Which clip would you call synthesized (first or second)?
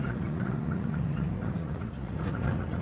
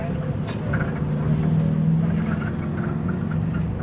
first